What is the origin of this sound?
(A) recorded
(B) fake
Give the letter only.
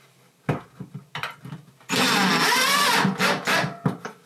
A